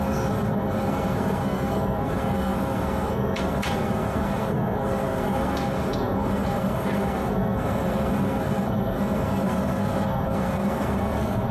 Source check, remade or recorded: remade